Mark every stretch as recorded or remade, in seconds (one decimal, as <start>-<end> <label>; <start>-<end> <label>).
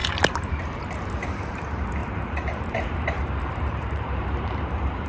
0.0-0.5 recorded; 0.5-5.1 remade